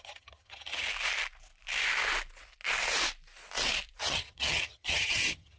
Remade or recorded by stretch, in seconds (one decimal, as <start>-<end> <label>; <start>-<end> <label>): 0.0-0.9 remade; 0.9-4.0 recorded; 4.0-5.6 remade

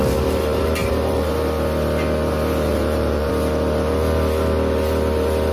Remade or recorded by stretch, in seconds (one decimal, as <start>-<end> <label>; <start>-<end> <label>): 0.0-0.8 recorded; 0.8-1.3 remade; 1.3-2.7 recorded; 2.7-3.3 remade; 3.3-5.5 recorded

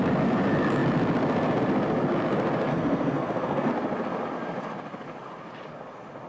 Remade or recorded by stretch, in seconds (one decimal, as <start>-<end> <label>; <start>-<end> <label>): 0.0-2.7 recorded; 2.7-3.7 remade; 3.7-6.3 recorded

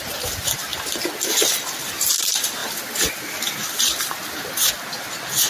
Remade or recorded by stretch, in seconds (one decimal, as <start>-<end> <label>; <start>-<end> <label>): 0.0-5.5 recorded

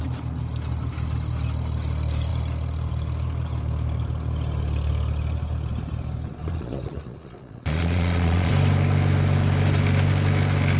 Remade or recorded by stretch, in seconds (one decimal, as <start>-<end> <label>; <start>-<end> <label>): 0.0-6.4 recorded; 6.4-8.5 remade; 8.5-10.8 recorded